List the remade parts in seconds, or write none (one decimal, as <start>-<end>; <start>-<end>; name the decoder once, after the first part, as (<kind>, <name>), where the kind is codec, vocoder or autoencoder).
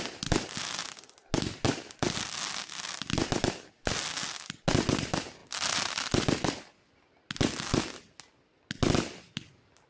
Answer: none